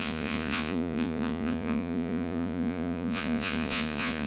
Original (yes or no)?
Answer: no